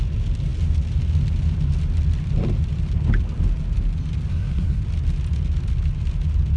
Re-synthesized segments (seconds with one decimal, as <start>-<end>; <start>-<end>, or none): 4.3-4.8